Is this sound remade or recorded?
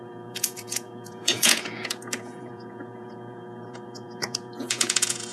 remade